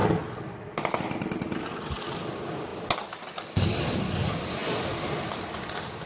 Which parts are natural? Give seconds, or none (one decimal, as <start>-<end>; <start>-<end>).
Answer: 0.0-6.1